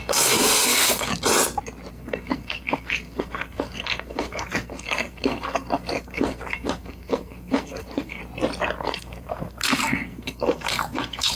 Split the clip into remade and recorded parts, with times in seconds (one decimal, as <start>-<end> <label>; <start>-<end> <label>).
0.0-1.1 remade; 1.1-1.9 recorded; 1.9-8.2 remade; 8.2-8.8 recorded; 8.8-11.3 remade